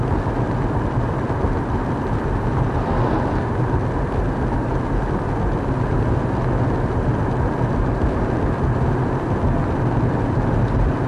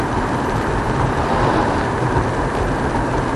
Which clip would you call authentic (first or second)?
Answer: first